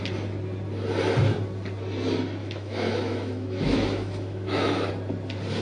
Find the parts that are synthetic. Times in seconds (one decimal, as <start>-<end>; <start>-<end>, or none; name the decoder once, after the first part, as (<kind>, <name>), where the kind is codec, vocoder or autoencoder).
2.4-4.9 (autoencoder, DAC-VAE)